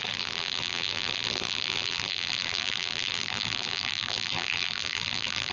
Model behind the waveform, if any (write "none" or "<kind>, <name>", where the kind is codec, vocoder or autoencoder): vocoder, BigVGAN v2